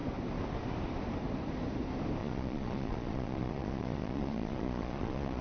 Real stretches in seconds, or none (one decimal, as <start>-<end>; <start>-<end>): 0.0-2.2